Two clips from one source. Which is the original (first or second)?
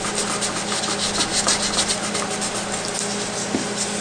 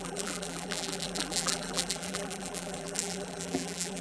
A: first